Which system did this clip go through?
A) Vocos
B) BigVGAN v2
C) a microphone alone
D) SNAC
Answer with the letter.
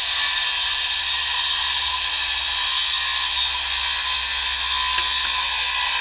C